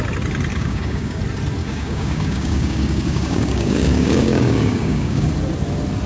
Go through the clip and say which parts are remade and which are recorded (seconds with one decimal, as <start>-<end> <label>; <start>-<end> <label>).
0.0-0.5 recorded; 0.5-1.2 remade; 1.2-1.6 recorded; 1.6-5.3 remade; 5.3-6.1 recorded